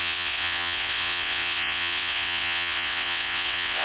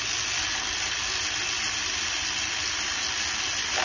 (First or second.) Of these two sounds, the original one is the second